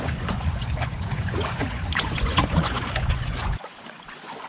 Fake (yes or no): yes